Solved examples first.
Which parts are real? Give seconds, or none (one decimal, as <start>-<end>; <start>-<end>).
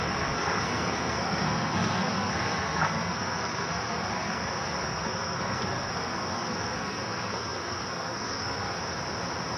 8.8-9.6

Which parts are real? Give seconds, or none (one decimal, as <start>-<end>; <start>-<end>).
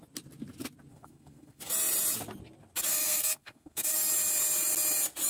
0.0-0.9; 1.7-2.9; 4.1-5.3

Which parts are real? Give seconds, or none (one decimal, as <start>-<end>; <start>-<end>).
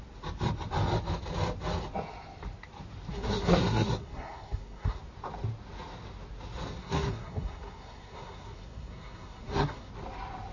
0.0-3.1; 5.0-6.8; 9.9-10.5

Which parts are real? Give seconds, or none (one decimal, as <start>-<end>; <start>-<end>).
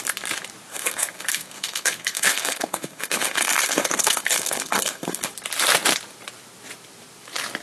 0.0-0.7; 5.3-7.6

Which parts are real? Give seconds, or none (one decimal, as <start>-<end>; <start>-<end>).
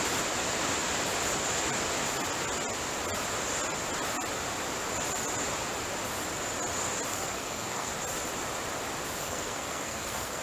0.0-7.1; 7.9-9.2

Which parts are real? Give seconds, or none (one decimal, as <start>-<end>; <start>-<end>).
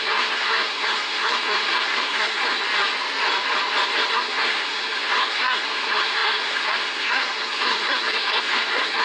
2.6-4.1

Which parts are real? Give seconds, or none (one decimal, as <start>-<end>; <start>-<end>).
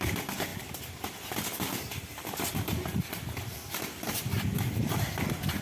0.0-5.6